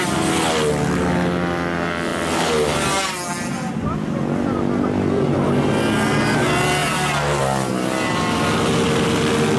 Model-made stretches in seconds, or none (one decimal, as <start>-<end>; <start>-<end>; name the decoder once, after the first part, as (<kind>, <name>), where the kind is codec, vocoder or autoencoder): 6.8-7.4 (vocoder, BigVGAN v2)